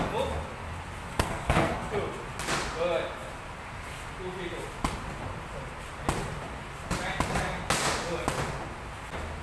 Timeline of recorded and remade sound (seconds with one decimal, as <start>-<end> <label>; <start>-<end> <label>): 0.0-1.1 recorded; 1.1-1.9 remade; 1.9-9.4 recorded